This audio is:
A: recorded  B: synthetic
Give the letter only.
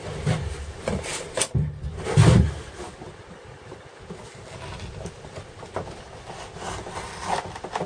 A